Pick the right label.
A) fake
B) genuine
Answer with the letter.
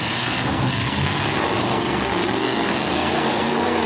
A